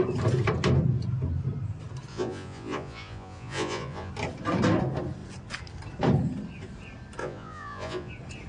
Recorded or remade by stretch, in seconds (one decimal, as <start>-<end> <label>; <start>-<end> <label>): 0.0-2.1 recorded; 2.1-4.1 remade; 4.1-7.2 recorded; 7.2-8.1 remade; 8.1-8.5 recorded